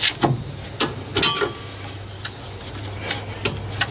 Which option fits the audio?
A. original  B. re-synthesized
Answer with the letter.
A